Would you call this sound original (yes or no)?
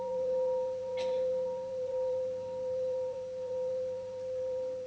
no